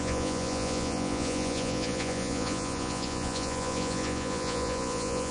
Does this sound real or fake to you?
fake